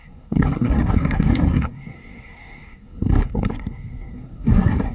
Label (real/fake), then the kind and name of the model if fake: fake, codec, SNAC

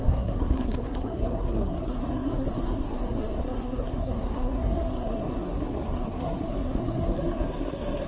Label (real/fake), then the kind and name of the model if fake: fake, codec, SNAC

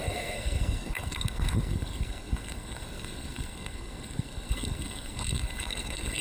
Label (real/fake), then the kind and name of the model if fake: fake, codec, SNAC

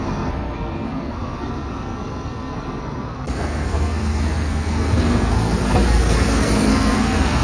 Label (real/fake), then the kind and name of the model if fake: fake, codec, SNAC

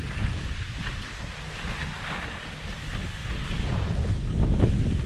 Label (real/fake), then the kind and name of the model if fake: real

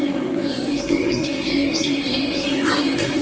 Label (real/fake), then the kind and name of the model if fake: fake, codec, SNAC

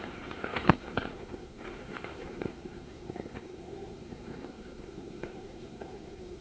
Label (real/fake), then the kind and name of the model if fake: fake, codec, SNAC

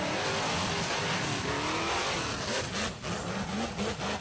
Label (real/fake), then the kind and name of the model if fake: real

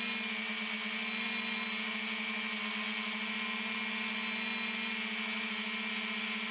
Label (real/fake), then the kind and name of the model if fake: real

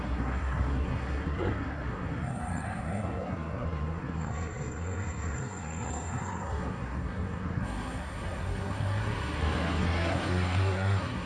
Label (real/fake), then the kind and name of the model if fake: fake, codec, SNAC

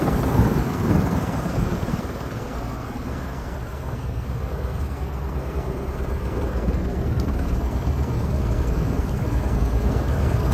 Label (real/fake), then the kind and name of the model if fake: fake, codec, SNAC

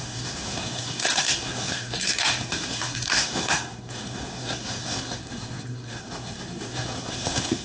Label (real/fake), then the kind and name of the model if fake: fake, codec, SNAC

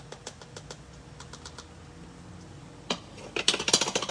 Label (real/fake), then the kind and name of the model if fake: real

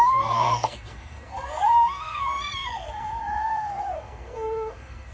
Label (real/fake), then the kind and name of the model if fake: fake, codec, SNAC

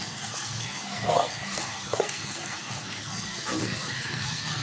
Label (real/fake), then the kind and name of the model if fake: fake, codec, SNAC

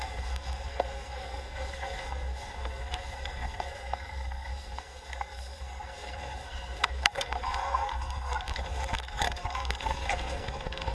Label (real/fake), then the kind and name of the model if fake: fake, codec, SNAC